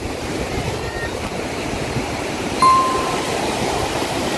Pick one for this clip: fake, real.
fake